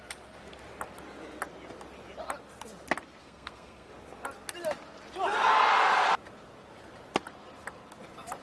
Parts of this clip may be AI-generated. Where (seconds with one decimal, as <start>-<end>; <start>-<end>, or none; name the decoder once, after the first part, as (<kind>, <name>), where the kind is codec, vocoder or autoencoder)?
3.2-3.9 (codec, SNAC)